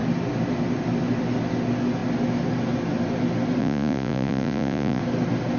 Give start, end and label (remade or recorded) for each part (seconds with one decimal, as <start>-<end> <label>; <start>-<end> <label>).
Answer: 0.0-3.6 recorded; 3.6-5.0 remade; 5.0-5.6 recorded